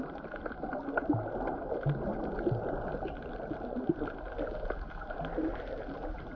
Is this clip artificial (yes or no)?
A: no